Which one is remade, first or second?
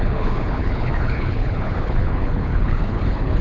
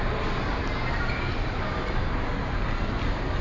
first